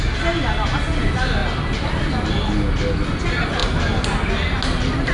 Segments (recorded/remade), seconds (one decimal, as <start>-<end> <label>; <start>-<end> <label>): 0.0-5.1 recorded